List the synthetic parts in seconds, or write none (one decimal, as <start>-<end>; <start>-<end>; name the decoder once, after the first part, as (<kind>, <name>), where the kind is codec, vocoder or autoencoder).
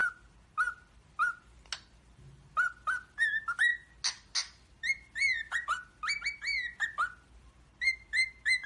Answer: none